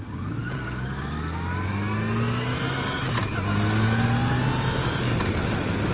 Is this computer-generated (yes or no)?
no